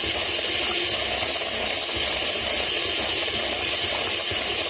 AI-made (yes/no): no